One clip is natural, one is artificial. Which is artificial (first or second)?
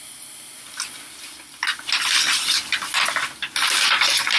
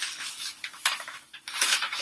second